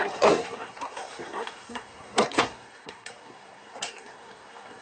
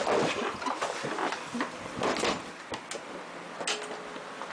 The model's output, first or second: first